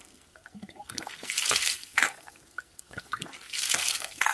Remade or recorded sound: remade